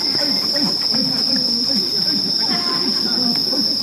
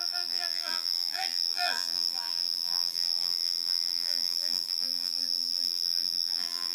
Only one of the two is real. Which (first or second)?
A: first